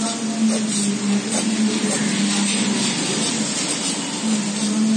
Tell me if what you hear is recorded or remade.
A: recorded